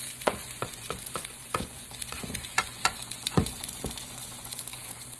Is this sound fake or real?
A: fake